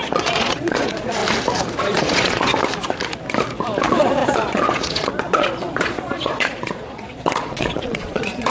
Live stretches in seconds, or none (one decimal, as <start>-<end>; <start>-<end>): 1.2-1.8; 2.5-3.8